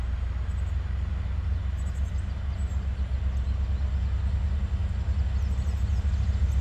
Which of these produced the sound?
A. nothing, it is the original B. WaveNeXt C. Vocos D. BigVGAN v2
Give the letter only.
A